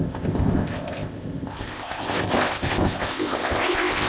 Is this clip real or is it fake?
fake